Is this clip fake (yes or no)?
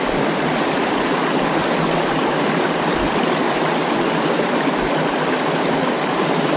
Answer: no